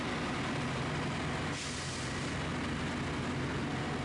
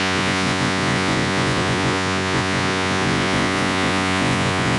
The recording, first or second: first